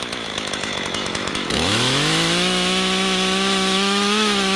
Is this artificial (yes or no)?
yes